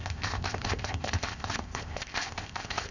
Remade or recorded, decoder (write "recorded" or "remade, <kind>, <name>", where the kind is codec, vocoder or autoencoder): remade, codec, ZipCodec